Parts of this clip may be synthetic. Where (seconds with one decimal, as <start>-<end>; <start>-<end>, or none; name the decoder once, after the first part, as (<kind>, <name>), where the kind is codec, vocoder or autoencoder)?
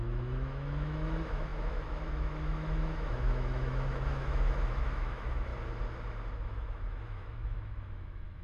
0.0-5.5 (autoencoder, DAC-VAE); 6.3-8.4